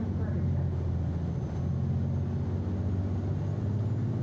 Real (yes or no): yes